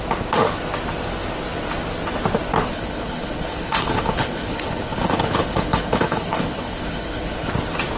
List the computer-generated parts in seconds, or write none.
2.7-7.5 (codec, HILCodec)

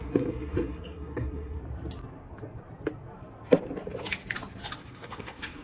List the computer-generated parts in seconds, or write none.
0.0-1.6 (codec, SNAC); 4.8-5.6